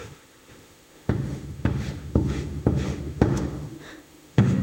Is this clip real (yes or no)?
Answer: no